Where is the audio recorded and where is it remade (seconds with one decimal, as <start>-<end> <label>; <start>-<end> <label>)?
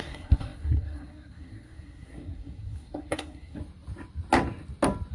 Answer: 0.0-3.6 remade; 3.6-5.1 recorded